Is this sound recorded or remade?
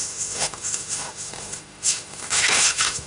remade